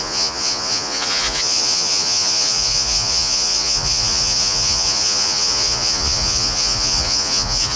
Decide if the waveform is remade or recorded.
remade